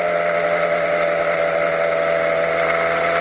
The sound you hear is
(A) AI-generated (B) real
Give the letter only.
B